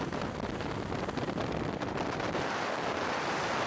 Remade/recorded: remade